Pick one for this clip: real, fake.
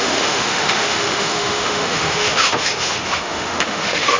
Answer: fake